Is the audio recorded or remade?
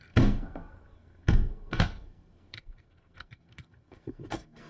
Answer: remade